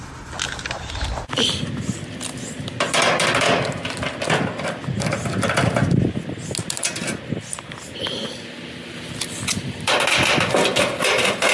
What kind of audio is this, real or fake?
real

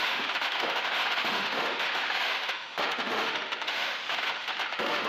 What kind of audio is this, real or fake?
fake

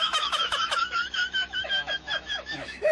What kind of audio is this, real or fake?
fake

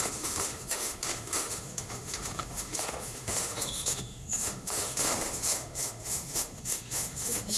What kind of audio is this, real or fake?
fake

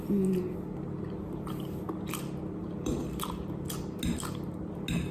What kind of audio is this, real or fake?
real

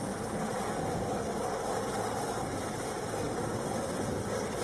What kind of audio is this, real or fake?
real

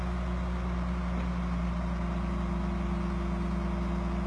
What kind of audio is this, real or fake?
real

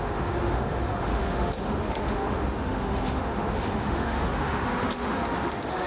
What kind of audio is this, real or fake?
fake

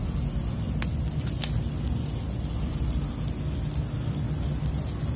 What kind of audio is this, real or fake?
real